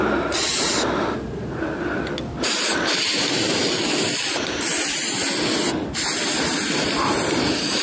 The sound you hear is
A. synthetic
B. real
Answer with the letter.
B